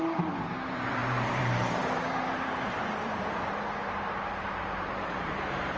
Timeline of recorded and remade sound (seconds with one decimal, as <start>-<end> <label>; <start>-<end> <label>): 0.0-5.8 remade